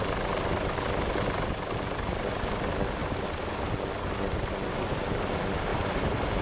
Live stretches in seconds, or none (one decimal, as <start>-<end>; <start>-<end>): 0.0-5.7